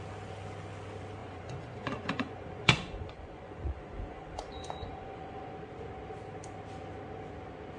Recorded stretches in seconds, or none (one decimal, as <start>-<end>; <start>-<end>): 0.0-1.2; 5.5-7.8